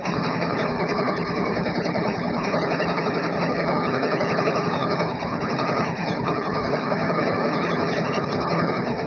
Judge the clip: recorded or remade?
remade